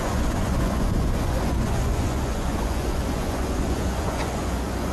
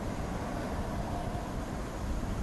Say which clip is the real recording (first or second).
second